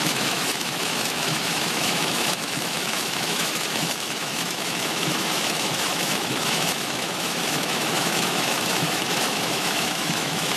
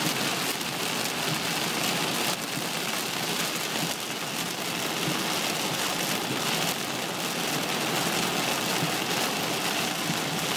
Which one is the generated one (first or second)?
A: first